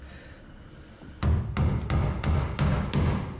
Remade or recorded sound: recorded